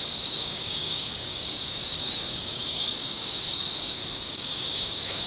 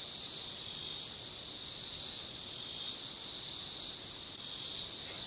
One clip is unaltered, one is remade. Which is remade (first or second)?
first